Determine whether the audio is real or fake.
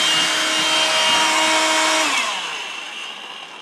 real